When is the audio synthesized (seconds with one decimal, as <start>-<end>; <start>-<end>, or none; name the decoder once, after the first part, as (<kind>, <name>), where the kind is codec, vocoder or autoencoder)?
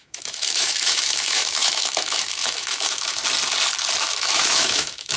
0.0-3.2 (autoencoder, DAC-VAE); 4.0-5.2